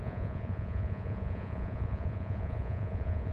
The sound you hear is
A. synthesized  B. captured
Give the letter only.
A